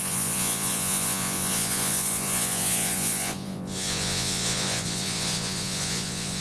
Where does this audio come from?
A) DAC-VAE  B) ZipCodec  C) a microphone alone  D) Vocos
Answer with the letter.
D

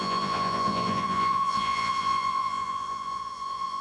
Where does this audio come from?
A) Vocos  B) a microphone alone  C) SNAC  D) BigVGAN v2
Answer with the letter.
A